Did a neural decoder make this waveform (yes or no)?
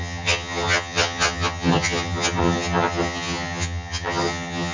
yes